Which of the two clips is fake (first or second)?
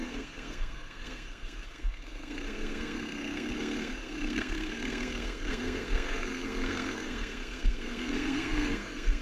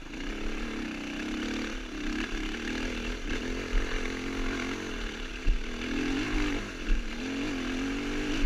first